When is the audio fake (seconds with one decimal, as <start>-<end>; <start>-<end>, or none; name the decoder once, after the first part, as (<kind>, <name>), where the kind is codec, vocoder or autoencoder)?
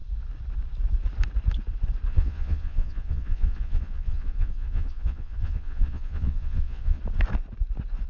2.1-7.0 (vocoder, Vocos)